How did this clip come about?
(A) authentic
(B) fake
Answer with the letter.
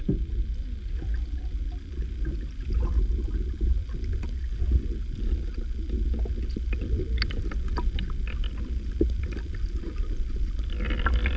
A